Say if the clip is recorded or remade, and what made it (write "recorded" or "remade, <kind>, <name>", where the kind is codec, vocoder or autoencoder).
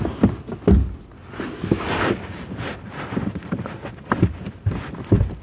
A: recorded